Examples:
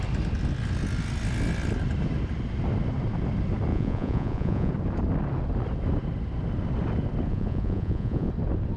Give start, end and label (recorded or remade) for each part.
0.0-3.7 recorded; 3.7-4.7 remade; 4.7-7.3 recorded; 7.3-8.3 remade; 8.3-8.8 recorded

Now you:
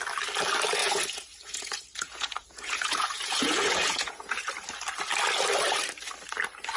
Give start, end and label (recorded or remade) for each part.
0.0-0.8 recorded; 0.8-4.5 remade; 4.5-6.8 recorded

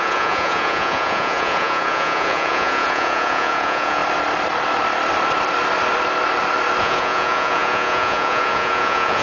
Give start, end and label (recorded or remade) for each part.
0.0-4.0 remade; 4.0-6.8 recorded; 6.8-9.2 remade